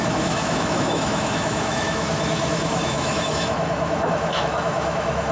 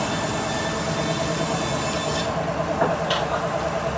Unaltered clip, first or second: second